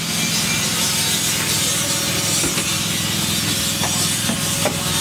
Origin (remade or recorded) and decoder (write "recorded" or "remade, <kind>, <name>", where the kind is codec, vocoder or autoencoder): recorded